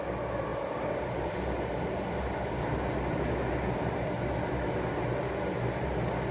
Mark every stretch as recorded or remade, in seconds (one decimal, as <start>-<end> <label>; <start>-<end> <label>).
0.0-6.3 recorded